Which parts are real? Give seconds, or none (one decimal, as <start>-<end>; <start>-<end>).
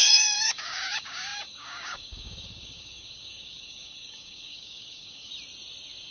5.3-6.1